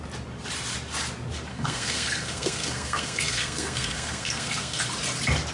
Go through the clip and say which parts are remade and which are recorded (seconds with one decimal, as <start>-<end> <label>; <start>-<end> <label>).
0.0-1.5 recorded; 1.5-4.8 remade; 4.8-5.5 recorded